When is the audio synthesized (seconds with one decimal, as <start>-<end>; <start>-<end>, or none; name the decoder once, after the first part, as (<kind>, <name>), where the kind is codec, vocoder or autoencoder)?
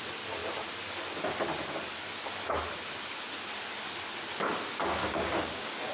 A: 5.0-5.9 (codec, DAC)